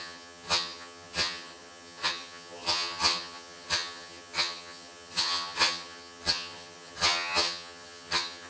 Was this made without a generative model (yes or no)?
no